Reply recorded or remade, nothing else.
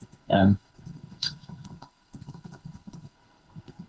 remade